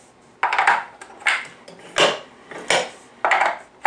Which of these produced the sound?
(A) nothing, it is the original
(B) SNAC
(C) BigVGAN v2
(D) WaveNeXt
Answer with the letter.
A